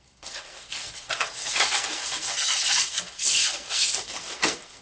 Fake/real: fake